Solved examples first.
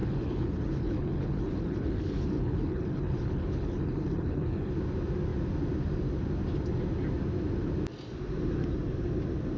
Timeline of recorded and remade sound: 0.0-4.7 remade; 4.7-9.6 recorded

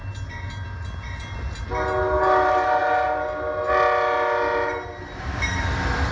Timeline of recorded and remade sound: 0.0-6.1 recorded

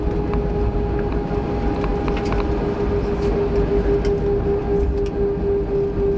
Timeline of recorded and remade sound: 0.0-6.2 recorded

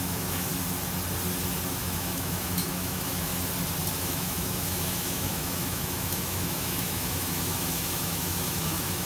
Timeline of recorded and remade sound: 0.0-0.5 remade; 0.5-1.7 recorded; 1.7-3.3 remade; 3.3-3.9 recorded; 3.9-9.1 remade

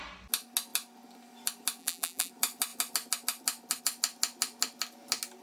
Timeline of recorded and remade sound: 0.0-1.8 recorded; 1.8-2.3 remade; 2.3-5.4 recorded

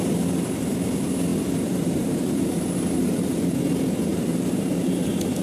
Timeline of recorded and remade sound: 0.0-1.3 recorded; 1.3-3.6 remade; 3.6-4.1 recorded; 4.1-5.4 remade